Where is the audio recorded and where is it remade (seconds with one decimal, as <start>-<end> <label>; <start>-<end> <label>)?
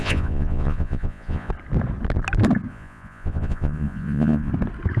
0.0-1.5 remade; 1.5-2.7 recorded; 2.7-4.5 remade; 4.5-5.0 recorded